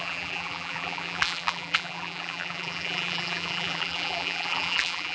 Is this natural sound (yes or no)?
no